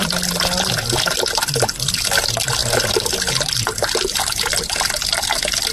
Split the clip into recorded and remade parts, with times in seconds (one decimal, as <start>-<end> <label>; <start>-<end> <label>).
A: 0.0-5.7 recorded